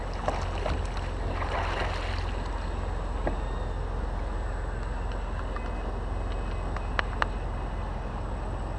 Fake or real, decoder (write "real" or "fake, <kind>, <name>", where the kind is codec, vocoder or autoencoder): real